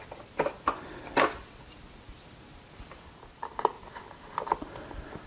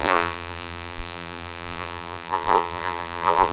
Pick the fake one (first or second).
second